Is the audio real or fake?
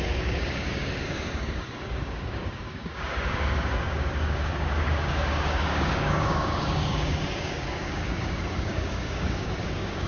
fake